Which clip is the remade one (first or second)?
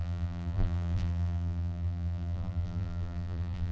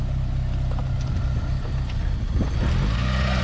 first